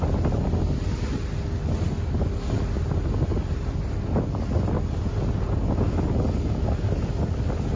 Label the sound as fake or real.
real